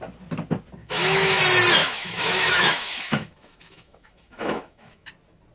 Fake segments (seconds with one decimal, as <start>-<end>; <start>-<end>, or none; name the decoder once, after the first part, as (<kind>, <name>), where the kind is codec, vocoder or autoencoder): 0.8-1.4 (autoencoder, DAC-VAE); 1.8-5.1